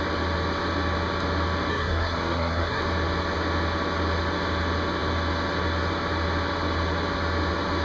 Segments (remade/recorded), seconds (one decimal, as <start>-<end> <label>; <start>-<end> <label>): 0.0-1.7 recorded; 1.7-2.8 remade; 2.8-7.8 recorded